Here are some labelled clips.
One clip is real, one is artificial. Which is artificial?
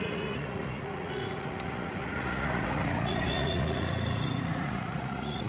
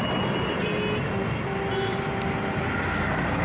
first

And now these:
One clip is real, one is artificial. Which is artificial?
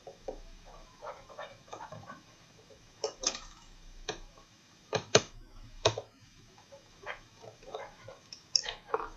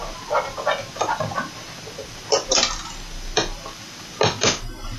first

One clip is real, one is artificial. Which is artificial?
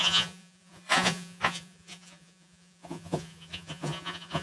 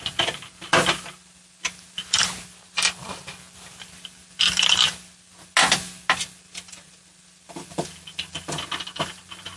first